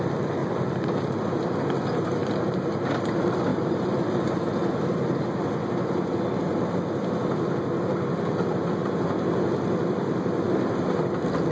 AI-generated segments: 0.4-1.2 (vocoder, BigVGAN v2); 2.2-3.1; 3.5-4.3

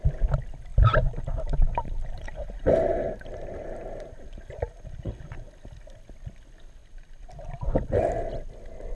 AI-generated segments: 0.7-5.5 (vocoder, BigVGAN v2); 6.8-7.3

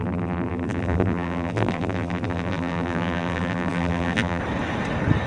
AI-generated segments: 0.0-4.4 (vocoder, BigVGAN v2)